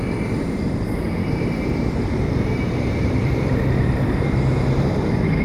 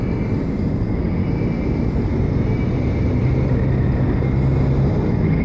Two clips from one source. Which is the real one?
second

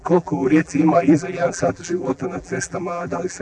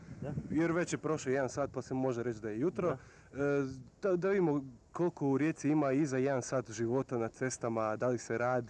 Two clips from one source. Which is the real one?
second